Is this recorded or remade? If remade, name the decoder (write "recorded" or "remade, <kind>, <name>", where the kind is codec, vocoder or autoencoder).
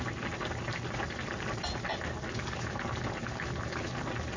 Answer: recorded